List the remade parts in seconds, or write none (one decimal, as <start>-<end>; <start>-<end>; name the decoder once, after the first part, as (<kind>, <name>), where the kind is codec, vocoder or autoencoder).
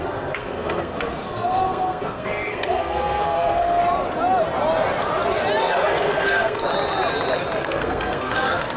0.0-3.8 (codec, SNAC); 5.6-6.7; 7.6-8.8